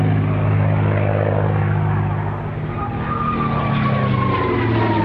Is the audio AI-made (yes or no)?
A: no